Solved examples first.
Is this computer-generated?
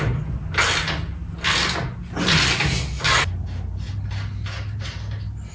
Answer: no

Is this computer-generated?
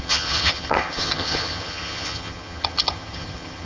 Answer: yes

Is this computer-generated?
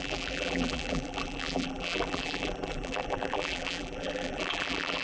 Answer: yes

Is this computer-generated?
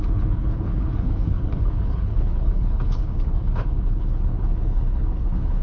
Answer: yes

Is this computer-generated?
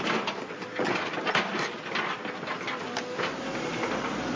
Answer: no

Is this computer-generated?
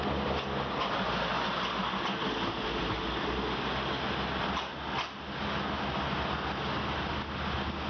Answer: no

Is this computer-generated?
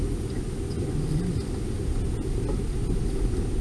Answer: no